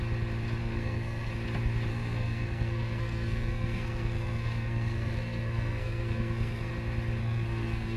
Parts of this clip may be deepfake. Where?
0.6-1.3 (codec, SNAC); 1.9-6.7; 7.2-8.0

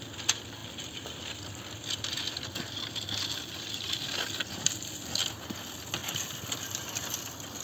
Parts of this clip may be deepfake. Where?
none